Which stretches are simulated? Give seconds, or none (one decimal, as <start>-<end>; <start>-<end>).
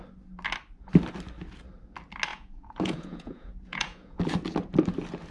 2.3-4.2